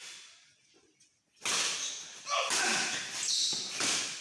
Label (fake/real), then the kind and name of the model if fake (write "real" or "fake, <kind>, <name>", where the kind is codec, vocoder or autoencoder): real